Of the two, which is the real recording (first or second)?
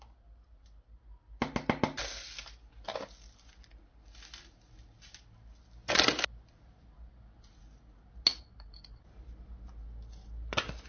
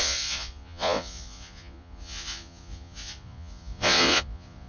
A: first